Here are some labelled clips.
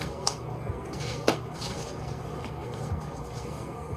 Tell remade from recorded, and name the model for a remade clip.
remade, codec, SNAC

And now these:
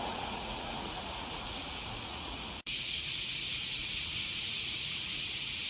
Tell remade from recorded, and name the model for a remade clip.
remade, vocoder, Vocos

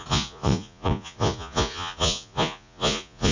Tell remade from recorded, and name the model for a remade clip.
remade, vocoder, Vocos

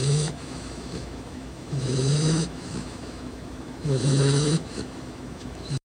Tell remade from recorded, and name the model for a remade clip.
remade, autoencoder, DAC-VAE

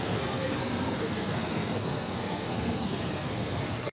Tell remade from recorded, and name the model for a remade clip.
remade, codec, SNAC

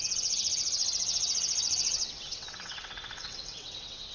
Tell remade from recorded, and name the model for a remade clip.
remade, vocoder, WaveNeXt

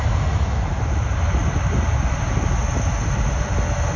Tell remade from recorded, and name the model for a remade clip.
recorded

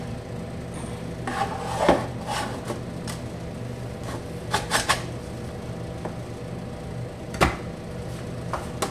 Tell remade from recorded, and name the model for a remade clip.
recorded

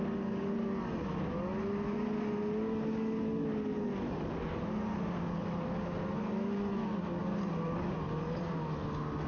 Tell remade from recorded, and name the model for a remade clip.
recorded